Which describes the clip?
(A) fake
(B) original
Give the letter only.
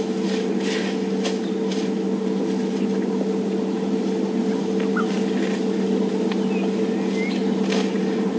B